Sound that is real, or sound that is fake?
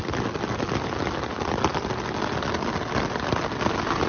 real